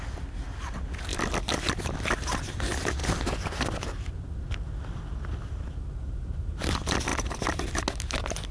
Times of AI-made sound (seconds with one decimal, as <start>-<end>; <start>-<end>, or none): none